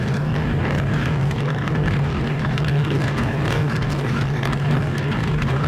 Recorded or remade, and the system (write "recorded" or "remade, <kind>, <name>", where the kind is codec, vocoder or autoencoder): remade, codec, DAC